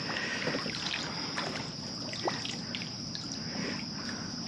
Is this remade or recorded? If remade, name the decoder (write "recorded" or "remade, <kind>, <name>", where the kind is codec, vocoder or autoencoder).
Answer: recorded